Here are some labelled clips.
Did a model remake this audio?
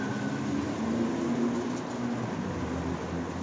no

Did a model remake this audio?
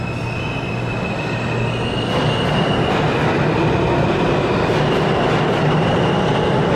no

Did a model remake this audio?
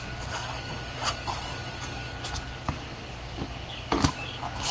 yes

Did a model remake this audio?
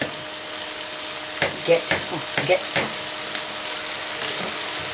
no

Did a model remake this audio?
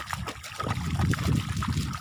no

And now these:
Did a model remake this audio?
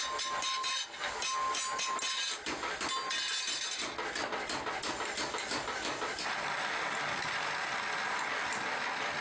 no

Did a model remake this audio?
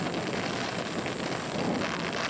no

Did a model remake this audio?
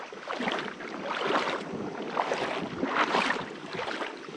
yes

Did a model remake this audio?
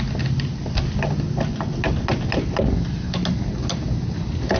no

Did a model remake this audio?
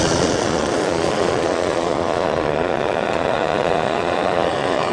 yes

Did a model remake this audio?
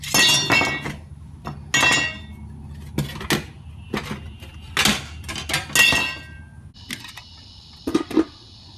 no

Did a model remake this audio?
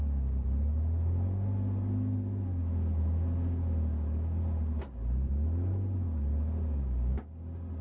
no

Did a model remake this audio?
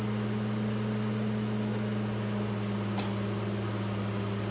no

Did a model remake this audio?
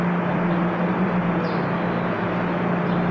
no